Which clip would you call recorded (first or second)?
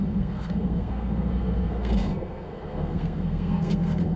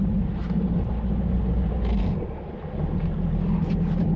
second